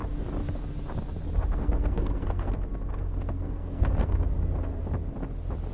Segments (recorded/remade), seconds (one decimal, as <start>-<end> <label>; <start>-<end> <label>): 0.0-1.5 recorded; 1.5-2.5 remade; 2.5-2.9 recorded; 2.9-4.1 remade; 4.1-5.7 recorded